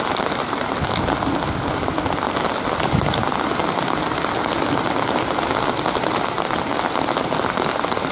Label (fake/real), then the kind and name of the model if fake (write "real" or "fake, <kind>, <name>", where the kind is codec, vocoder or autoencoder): real